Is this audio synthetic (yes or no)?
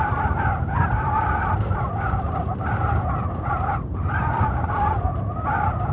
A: no